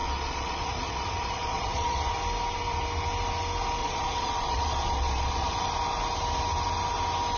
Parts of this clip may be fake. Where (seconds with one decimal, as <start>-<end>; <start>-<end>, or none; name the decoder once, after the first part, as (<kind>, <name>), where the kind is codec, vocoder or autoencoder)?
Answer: 0.0-2.1 (vocoder, Vocos); 3.8-5.6